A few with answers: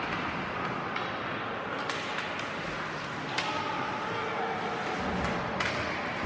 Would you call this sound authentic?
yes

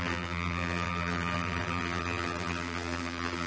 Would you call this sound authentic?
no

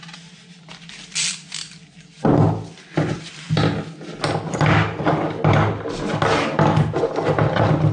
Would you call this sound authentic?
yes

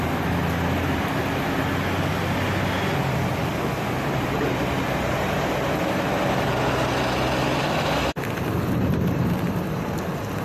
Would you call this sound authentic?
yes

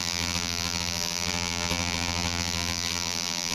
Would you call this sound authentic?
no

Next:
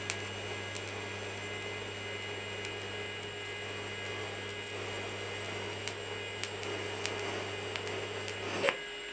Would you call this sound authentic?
yes